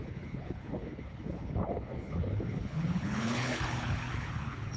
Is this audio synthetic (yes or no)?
yes